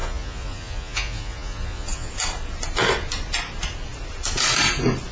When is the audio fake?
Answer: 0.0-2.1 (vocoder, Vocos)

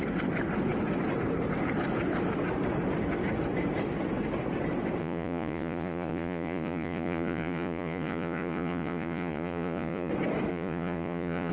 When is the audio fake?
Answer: 5.0-10.1 (vocoder, Vocos); 10.5-11.5

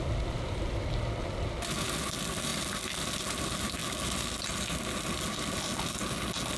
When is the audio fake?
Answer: none